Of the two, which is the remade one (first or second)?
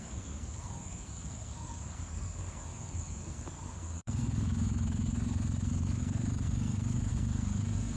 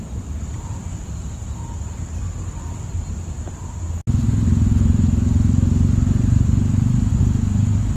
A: first